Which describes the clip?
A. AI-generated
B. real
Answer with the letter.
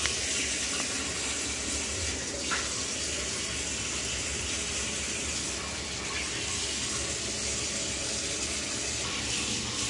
B